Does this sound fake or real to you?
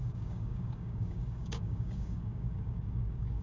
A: fake